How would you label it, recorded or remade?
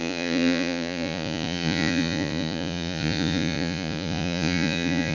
remade